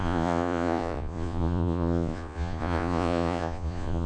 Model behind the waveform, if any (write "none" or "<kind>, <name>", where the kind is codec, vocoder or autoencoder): vocoder, Vocos